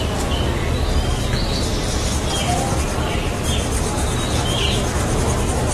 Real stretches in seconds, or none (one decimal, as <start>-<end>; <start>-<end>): 0.0-5.7